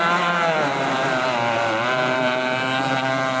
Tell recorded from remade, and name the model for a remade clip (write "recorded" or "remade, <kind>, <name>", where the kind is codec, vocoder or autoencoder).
recorded